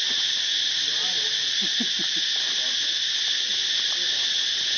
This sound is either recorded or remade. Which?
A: recorded